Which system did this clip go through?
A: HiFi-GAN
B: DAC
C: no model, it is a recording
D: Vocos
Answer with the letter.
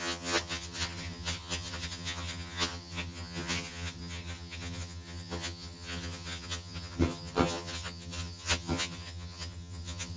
A